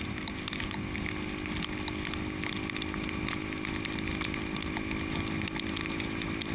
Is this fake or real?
real